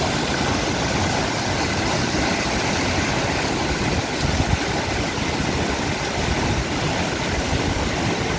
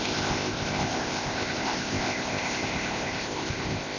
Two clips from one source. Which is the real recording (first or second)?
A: first